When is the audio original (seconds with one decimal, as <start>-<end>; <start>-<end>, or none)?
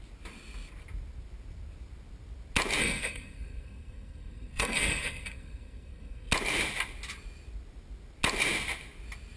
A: 0.0-2.8; 6.3-9.4